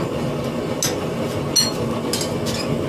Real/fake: real